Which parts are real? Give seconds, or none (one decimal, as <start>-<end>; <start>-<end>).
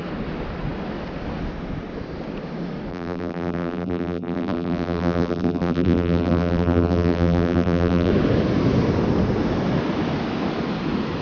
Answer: 0.0-2.9; 8.1-11.2